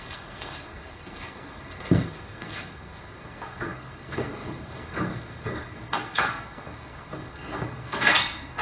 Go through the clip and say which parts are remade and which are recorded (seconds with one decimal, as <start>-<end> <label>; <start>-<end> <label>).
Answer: 0.0-8.6 remade